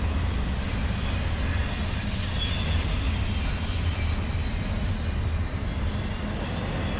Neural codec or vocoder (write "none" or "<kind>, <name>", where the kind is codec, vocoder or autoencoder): none